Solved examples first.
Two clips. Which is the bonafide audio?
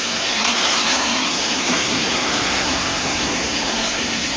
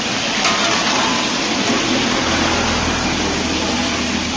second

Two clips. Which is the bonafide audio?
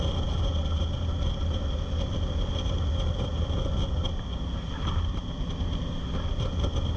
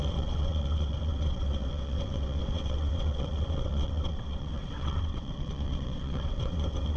first